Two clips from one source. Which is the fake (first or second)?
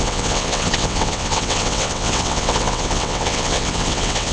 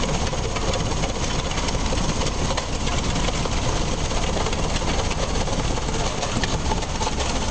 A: first